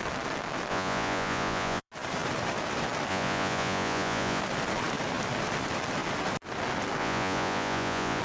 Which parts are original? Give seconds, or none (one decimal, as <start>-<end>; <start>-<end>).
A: 0.0-0.7; 1.9-3.1; 4.4-7.0